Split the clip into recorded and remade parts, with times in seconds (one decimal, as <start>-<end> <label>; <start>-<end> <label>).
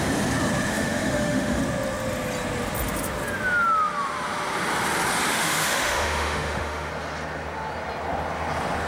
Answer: 0.0-0.7 recorded; 0.7-1.6 remade; 1.6-5.3 recorded; 5.3-6.9 remade; 6.9-8.9 recorded